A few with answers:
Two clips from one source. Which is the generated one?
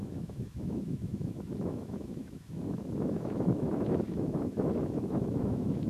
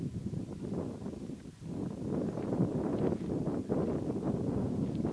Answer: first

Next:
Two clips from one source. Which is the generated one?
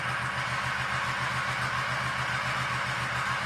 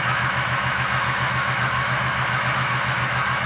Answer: second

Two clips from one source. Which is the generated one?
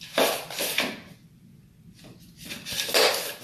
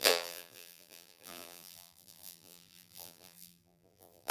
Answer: second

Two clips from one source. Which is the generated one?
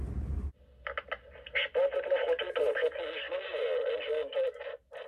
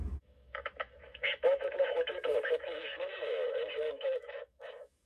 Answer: second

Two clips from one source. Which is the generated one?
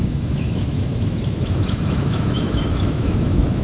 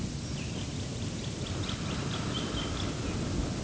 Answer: first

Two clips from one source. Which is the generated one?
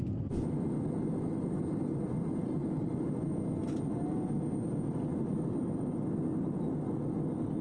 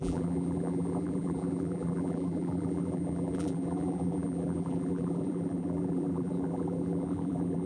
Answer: second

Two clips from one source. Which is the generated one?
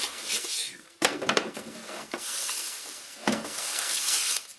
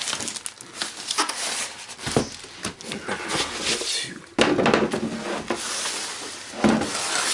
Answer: first